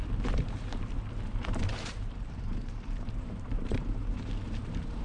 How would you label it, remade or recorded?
remade